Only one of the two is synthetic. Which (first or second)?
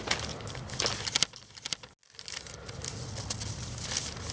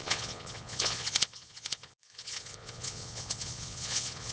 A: second